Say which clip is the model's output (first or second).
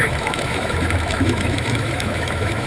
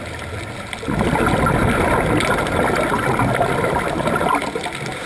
first